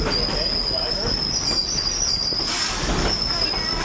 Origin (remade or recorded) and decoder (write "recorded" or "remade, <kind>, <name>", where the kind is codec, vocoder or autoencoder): recorded